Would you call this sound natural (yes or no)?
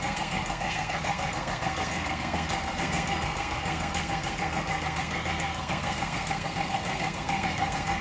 no